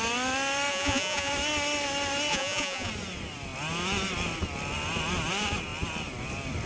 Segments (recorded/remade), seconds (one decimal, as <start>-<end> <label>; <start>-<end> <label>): 0.0-0.7 recorded; 0.7-1.3 remade; 1.3-2.3 recorded; 2.3-2.9 remade; 2.9-6.7 recorded